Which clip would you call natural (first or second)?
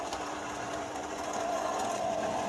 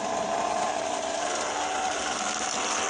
second